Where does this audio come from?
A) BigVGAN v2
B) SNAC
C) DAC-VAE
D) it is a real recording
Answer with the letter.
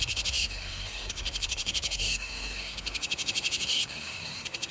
B